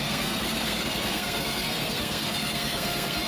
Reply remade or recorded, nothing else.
remade